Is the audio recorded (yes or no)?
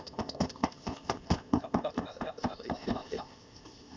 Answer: no